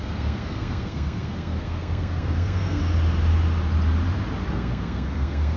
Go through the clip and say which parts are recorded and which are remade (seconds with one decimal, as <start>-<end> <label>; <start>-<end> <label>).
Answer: 0.0-2.8 remade; 2.8-4.5 recorded; 4.5-5.6 remade